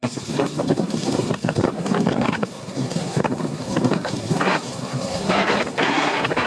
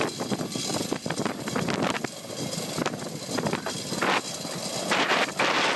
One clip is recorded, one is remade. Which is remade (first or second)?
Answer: first